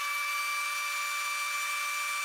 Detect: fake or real real